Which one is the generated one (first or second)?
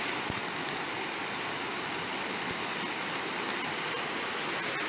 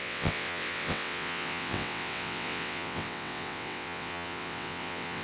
second